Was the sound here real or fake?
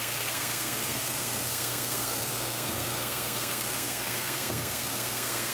fake